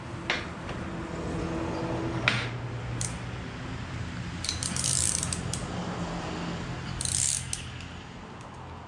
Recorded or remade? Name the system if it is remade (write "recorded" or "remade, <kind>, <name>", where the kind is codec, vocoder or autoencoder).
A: recorded